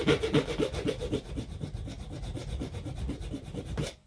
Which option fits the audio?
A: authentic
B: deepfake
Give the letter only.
A